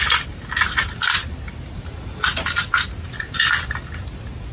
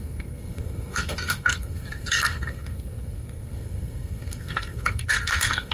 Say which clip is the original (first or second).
first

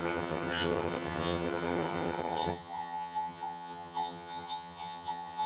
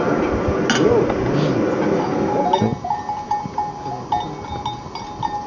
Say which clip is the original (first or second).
second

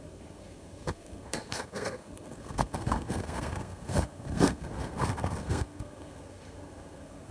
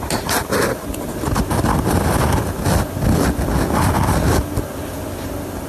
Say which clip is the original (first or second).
second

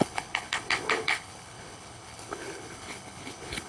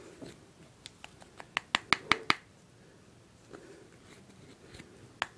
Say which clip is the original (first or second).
second